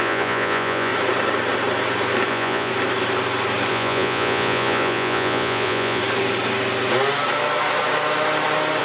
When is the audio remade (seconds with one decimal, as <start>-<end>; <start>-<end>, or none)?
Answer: 0.0-0.9; 2.3-2.7; 3.7-6.0